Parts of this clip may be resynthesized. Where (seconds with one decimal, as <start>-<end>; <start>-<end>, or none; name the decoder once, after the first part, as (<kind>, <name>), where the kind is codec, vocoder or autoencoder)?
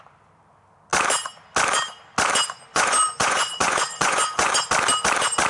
2.7-4.5 (vocoder, Vocos)